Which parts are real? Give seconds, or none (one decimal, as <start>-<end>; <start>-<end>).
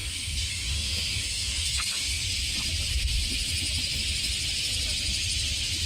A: 2.2-5.9